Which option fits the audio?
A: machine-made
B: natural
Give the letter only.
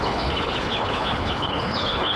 A